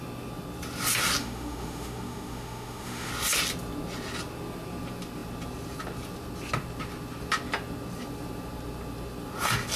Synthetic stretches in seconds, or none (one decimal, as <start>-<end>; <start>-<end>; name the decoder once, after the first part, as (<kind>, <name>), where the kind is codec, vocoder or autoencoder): 1.2-3.1 (autoencoder, DAC-VAE)